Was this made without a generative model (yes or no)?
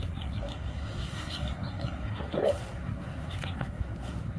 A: no